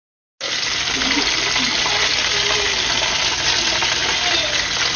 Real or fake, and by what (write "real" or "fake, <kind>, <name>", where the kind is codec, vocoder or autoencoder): real